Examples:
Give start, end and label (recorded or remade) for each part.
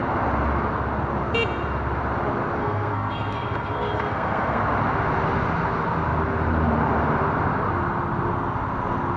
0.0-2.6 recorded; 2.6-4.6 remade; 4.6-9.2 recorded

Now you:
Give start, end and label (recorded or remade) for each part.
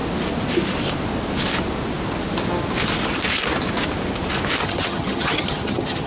0.0-4.6 recorded; 4.6-6.1 remade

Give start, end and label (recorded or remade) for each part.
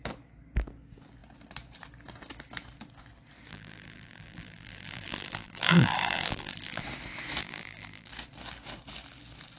0.0-3.5 recorded; 3.5-6.8 remade; 6.8-7.4 recorded; 7.4-8.1 remade; 8.1-9.6 recorded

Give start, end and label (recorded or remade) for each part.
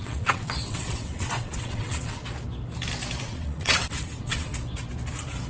0.0-2.2 remade; 2.2-3.2 recorded; 3.2-4.5 remade; 4.5-5.5 recorded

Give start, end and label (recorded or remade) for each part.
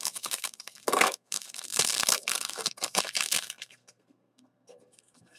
0.0-5.4 remade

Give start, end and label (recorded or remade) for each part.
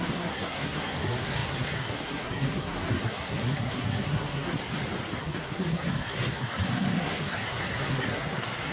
0.0-4.6 remade; 4.6-5.2 recorded; 5.2-8.7 remade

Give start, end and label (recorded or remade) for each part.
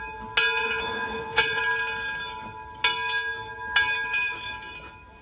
0.0-0.6 recorded; 0.6-1.6 remade; 1.6-5.2 recorded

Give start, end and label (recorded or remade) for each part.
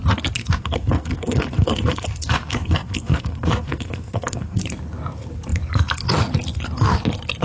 0.0-0.4 recorded; 0.4-4.6 remade; 4.6-7.4 recorded